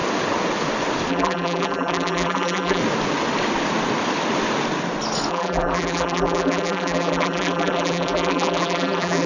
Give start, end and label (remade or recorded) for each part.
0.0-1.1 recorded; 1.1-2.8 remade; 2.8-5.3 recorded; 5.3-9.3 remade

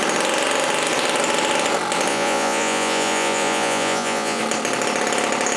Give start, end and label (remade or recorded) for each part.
0.0-2.1 recorded; 2.1-4.4 remade; 4.4-5.6 recorded

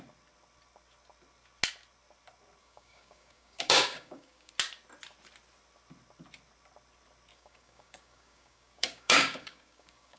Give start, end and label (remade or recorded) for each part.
0.0-2.6 recorded; 2.6-4.5 remade; 4.5-7.3 recorded; 7.3-10.2 remade